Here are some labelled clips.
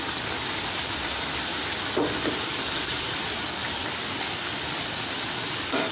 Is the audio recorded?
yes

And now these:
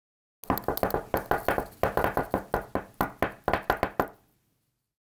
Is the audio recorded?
yes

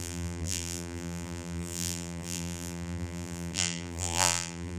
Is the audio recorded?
no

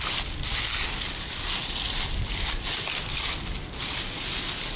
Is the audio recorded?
yes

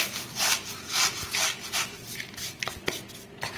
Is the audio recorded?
yes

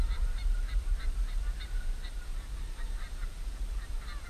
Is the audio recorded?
no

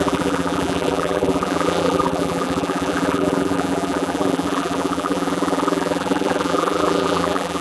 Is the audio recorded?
no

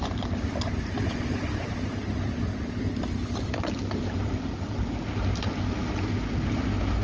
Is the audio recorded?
yes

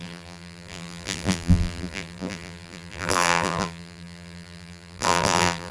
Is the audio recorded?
no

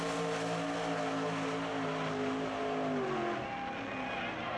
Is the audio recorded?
yes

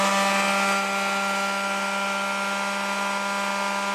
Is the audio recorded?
yes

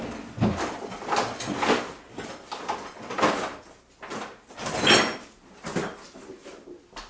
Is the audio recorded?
yes